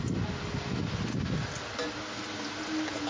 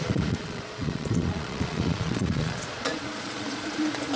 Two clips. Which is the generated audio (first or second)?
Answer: second